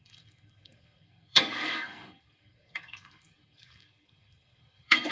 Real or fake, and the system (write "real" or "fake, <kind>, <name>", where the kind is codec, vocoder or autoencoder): fake, codec, SNAC